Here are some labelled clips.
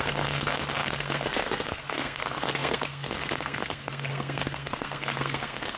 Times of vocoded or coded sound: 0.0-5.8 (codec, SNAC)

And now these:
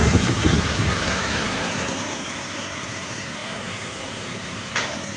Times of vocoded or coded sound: 0.0-5.2 (codec, SNAC)

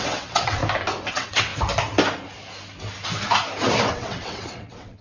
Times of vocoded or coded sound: 0.0-0.6 (vocoder, WaveNeXt); 1.1-1.5; 3.9-5.0

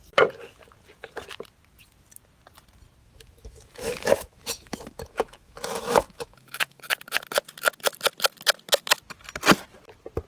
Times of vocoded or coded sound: 3.0-6.8 (autoencoder, DAC-VAE)

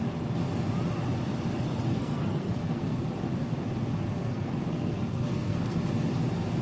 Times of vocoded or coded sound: 2.0-3.1 (codec, SNAC); 4.2-5.8

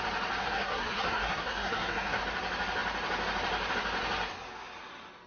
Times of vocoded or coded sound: 0.4-2.2 (codec, SNAC)

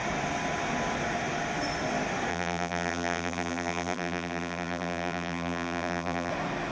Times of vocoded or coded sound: 2.3-6.3 (vocoder, BigVGAN v2)

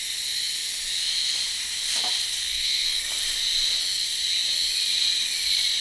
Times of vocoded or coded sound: 2.4-3.0 (codec, SNAC)